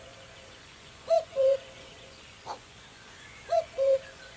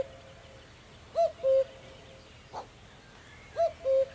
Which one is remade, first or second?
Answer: first